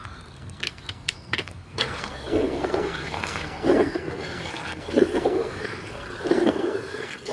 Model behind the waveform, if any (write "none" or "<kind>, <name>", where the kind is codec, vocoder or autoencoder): codec, SNAC